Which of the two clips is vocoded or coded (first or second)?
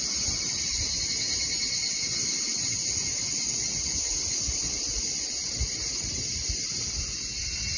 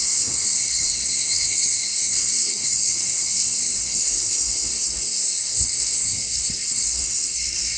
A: second